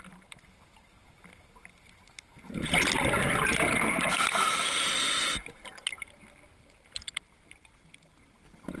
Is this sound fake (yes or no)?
no